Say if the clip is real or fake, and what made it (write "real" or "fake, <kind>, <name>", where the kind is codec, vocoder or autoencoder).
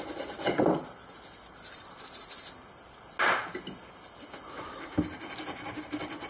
real